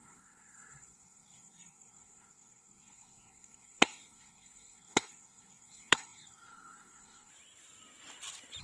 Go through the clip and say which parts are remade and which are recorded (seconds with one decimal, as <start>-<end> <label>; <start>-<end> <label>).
0.0-7.3 remade; 7.3-8.6 recorded